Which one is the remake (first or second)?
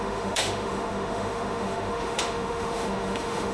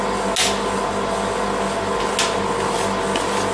first